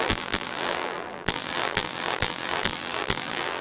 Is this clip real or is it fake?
fake